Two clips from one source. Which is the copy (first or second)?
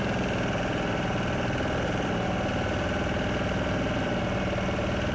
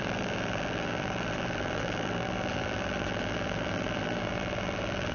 second